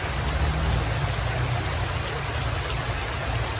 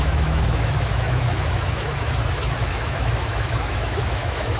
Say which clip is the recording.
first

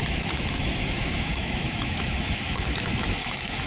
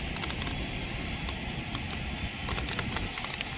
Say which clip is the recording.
second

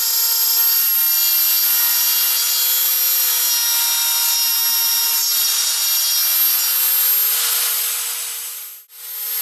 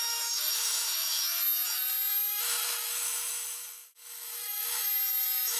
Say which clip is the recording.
first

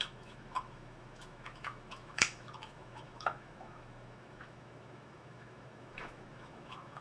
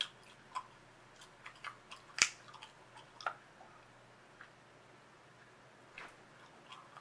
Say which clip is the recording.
second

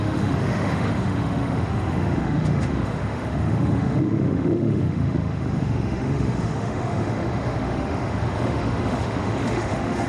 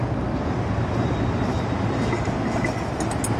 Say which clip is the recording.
second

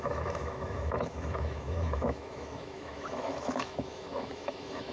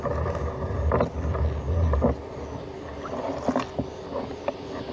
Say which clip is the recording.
second